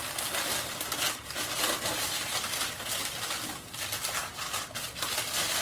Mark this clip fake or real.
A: real